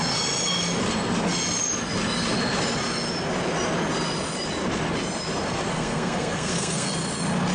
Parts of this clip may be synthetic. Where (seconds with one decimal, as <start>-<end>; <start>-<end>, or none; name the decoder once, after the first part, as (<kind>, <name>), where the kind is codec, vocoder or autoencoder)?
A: 5.7-6.9 (codec, SNAC)